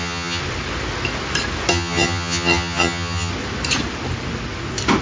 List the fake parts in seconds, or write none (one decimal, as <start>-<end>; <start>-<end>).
0.0-0.4; 1.7-3.3